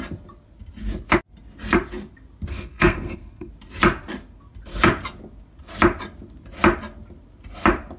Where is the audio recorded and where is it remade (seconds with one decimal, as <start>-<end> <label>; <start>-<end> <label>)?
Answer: 0.0-2.5 recorded; 2.5-3.5 remade; 3.5-8.0 recorded